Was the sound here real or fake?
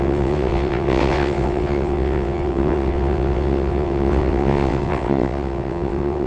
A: fake